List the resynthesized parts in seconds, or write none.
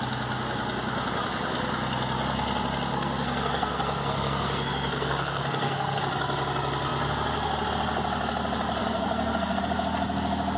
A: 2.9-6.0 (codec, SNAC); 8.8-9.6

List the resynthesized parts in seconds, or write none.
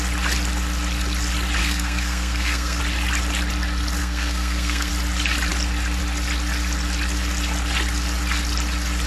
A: 1.6-2.8 (codec, SNAC); 4.0-4.9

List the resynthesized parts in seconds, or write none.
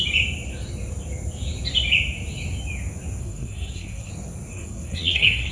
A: 3.2-4.1 (codec, SNAC); 4.5-5.5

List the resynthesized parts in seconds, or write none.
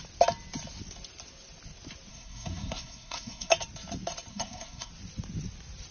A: 2.1-3.5 (codec, SNAC); 4.3-4.9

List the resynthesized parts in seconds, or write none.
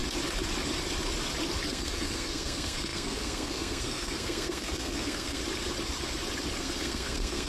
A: 1.7-5.4 (codec, SNAC); 6.6-7.5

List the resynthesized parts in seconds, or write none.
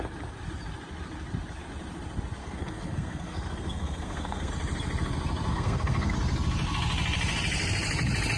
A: 2.4-4.5 (codec, SNAC); 5.5-6.1